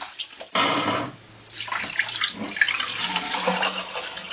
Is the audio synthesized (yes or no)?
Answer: no